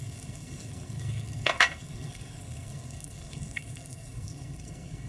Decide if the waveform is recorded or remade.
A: remade